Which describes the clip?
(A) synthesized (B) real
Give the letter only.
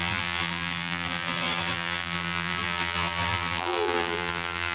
A